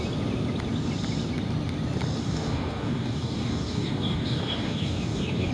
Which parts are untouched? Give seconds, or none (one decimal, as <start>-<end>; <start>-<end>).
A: 0.0-2.2